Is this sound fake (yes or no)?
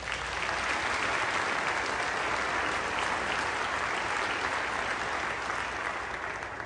no